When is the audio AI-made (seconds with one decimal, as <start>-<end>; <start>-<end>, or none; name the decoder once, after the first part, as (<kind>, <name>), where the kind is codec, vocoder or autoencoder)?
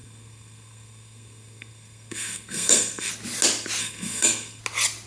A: 0.0-3.1 (codec, SNAC); 3.8-4.6